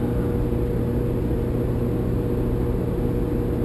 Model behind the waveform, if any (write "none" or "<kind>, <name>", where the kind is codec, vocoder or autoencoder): none